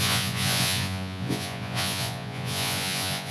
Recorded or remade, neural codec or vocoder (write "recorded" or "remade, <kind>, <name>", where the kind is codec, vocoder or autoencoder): remade, vocoder, Vocos